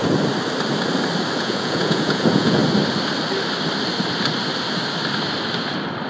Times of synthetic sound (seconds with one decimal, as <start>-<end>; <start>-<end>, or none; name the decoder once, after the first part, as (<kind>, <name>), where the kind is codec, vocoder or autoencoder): 1.4-2.6 (vocoder, Vocos)